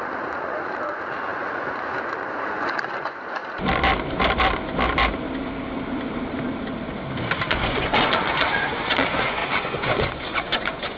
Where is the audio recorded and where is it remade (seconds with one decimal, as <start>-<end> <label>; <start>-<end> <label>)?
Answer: 0.0-3.4 remade; 3.4-7.5 recorded; 7.5-11.0 remade